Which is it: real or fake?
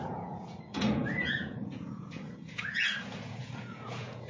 fake